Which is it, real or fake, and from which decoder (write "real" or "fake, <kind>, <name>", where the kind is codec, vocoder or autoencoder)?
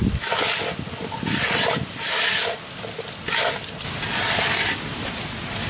real